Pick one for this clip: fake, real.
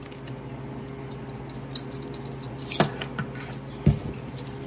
real